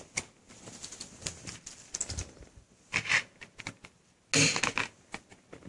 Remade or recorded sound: recorded